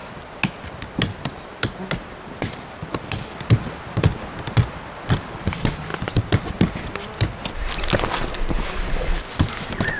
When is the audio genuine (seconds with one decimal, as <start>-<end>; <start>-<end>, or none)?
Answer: 0.0-1.2; 4.1-4.7; 5.9-8.5